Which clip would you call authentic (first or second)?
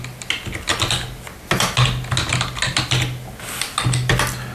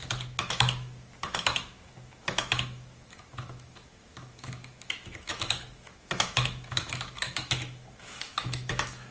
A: first